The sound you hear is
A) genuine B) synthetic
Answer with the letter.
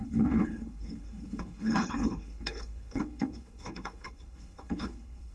B